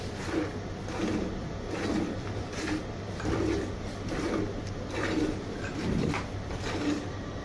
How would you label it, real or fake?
real